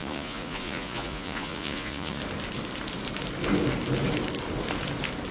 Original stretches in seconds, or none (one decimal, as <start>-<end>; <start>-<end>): 2.2-5.3